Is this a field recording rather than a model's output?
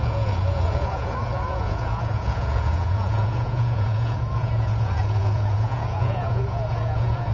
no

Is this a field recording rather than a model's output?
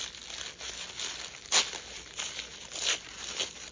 no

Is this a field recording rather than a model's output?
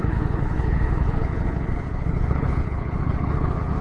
no